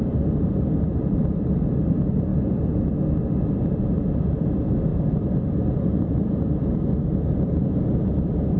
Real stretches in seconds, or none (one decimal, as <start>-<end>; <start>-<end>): 0.0-4.9; 7.8-8.6